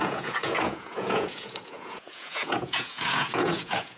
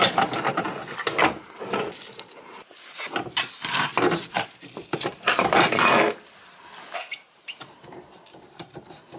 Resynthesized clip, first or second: first